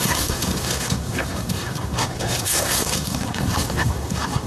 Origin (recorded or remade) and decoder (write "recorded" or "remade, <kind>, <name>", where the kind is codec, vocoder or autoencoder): remade, codec, SNAC